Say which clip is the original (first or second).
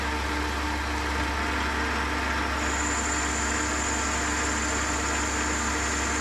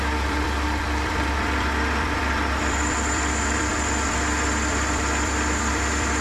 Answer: first